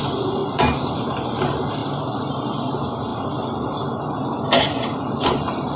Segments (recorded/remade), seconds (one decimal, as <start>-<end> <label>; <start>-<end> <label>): 0.0-1.8 remade; 1.8-2.3 recorded; 2.3-3.1 remade; 3.1-4.6 recorded; 4.6-5.8 remade